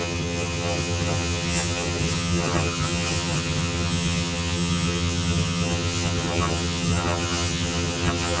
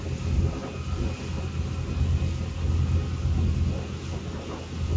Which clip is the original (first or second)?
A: second